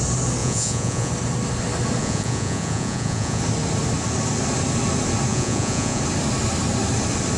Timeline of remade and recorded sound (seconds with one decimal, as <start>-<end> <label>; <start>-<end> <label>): 0.0-0.4 recorded; 0.4-1.1 remade; 1.1-2.0 recorded; 2.0-3.4 remade; 3.4-5.3 recorded; 5.3-6.0 remade; 6.0-7.4 recorded